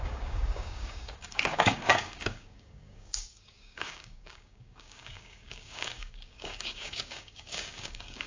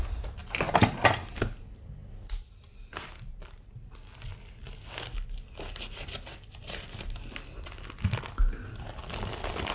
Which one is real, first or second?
second